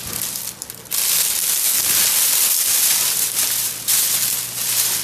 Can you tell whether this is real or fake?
real